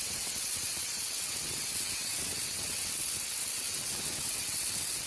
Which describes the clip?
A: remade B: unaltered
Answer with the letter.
A